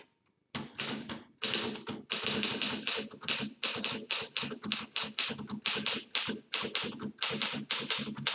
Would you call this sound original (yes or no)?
yes